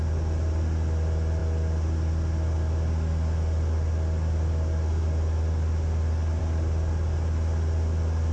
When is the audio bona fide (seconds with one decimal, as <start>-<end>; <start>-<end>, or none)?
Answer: 0.0-8.3